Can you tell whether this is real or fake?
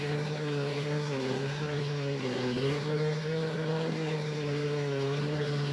fake